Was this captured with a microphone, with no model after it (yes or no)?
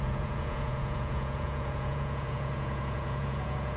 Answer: no